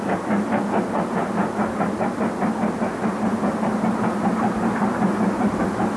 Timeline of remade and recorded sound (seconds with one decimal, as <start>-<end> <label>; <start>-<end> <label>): 0.0-6.0 recorded